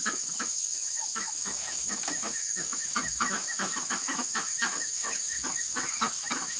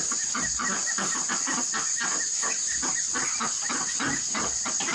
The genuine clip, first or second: second